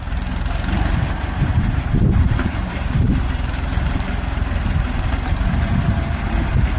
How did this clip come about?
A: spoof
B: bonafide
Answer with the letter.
A